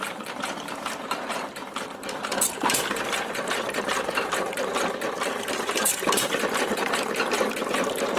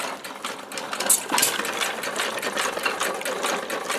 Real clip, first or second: second